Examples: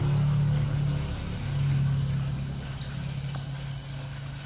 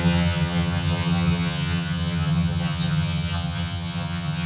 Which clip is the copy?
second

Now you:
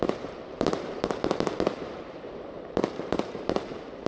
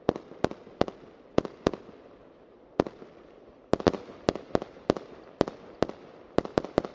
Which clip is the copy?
first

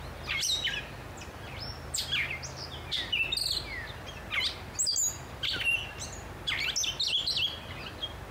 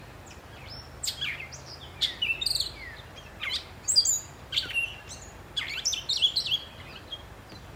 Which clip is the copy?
second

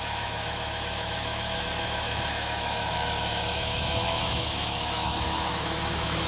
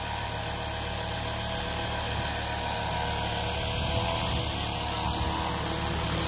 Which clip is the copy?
first